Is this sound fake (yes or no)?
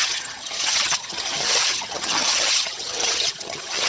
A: yes